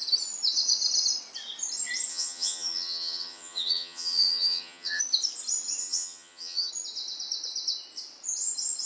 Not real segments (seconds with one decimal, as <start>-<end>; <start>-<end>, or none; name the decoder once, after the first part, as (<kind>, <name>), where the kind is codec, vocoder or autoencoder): 2.1-5.0 (vocoder, HiFi-GAN); 5.8-6.7